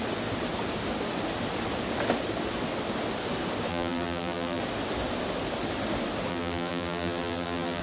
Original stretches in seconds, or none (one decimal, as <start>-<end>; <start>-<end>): 0.0-3.7; 4.6-6.3